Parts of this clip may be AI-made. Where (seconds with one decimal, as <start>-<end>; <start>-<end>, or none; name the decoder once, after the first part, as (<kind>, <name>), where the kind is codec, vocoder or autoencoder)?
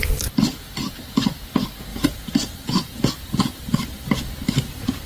1.9-5.1 (vocoder, BigVGAN v2)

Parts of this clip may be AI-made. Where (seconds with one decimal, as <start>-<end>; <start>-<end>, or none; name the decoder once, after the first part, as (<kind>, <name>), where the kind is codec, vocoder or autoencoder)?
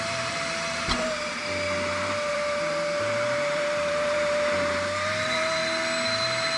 0.0-1.4 (vocoder, BigVGAN v2); 2.3-5.6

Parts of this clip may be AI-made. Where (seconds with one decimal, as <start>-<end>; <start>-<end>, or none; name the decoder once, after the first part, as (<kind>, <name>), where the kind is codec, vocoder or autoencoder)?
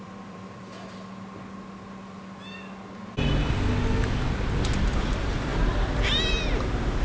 0.0-0.6 (vocoder, BigVGAN v2); 4.4-5.5; 6.3-7.0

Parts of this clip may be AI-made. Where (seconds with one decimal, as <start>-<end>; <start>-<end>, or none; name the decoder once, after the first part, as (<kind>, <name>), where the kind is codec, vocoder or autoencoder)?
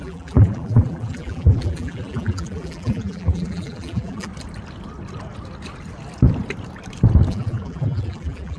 0.0-4.3 (vocoder, BigVGAN v2); 7.3-8.6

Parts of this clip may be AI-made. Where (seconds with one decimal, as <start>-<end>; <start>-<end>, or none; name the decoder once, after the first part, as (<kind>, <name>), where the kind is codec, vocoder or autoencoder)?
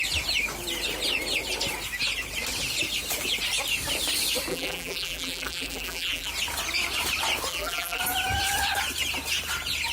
4.5-6.3 (vocoder, BigVGAN v2); 7.5-8.0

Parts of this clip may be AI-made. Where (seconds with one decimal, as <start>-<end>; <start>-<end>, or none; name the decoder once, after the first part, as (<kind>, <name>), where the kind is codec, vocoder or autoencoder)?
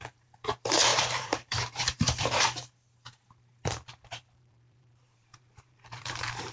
0.0-6.5 (vocoder, BigVGAN v2)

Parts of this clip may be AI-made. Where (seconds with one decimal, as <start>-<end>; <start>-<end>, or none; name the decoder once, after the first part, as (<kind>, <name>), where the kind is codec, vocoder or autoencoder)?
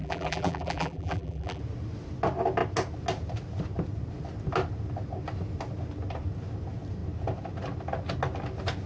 0.0-1.6 (vocoder, BigVGAN v2)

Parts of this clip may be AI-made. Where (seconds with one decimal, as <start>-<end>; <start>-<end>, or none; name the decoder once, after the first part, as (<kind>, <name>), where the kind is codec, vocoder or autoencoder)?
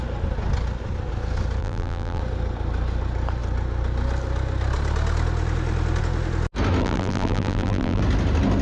1.6-2.2 (vocoder, BigVGAN v2); 6.8-8.0